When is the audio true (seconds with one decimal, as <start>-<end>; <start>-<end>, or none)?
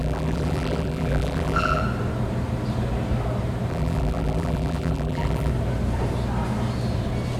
1.8-3.7; 5.5-7.4